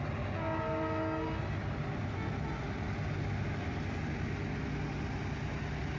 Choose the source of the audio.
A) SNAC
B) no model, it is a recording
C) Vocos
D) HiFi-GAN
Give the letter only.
B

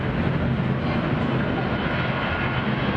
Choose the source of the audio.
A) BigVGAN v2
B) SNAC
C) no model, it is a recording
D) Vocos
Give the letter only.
C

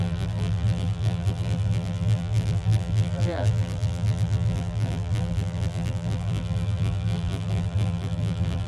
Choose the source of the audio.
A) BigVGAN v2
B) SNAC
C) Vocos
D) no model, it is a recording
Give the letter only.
A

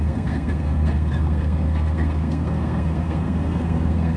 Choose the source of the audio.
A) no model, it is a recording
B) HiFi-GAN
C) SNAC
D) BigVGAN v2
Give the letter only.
C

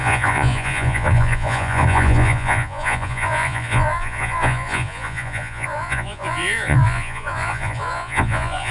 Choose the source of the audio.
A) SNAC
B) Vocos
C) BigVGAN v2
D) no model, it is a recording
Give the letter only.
B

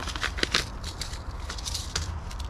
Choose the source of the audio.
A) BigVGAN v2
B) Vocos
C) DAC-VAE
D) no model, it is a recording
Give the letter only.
A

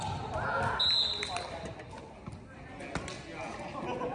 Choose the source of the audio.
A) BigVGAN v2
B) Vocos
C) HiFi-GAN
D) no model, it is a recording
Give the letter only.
D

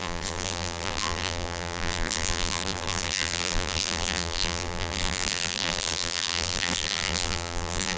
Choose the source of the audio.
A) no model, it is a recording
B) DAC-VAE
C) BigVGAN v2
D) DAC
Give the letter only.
C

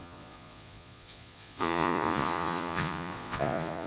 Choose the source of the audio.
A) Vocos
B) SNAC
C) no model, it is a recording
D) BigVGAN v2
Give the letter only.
A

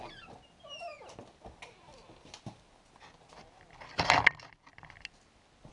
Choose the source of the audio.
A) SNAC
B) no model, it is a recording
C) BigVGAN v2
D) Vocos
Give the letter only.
B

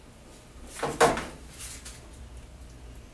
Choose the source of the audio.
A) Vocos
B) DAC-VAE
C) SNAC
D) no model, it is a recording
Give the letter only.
D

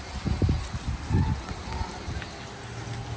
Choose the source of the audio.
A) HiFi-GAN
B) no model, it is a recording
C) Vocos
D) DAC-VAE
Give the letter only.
B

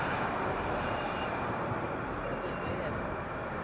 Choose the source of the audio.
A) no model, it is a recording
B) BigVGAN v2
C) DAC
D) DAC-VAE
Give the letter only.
B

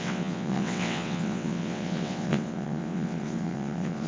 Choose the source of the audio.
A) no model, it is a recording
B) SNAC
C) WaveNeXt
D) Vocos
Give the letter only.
C